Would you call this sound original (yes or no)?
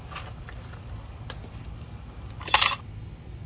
yes